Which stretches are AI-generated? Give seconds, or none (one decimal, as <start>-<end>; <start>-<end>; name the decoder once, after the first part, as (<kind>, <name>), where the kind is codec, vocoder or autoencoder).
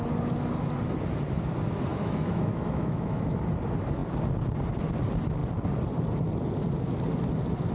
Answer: 1.9-3.2 (autoencoder, DAC-VAE)